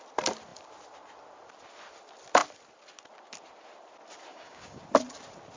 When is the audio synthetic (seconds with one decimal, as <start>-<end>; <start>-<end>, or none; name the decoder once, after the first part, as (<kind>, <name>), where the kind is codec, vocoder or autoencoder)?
4.3-4.8 (codec, DAC)